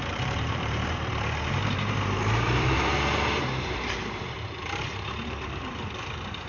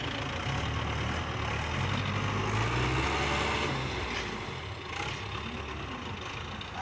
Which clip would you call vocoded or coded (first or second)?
first